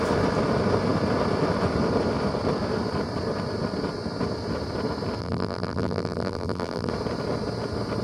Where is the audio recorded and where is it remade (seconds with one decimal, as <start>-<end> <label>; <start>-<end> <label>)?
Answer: 0.0-5.2 recorded; 5.2-6.9 remade; 6.9-8.0 recorded